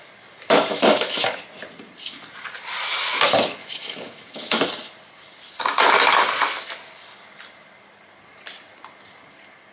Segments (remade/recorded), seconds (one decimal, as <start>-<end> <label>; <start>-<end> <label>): 0.0-0.7 recorded; 0.7-1.4 remade; 1.4-3.6 recorded; 3.6-4.6 remade; 4.6-9.7 recorded